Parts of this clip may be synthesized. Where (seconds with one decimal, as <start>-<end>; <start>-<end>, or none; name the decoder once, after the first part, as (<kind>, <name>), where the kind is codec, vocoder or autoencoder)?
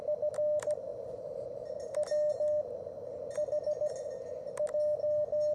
none